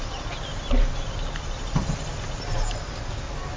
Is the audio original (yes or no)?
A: yes